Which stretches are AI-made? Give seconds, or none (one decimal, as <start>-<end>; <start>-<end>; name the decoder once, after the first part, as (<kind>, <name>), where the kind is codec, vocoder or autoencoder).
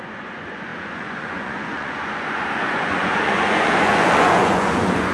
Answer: 0.0-5.1 (vocoder, Vocos)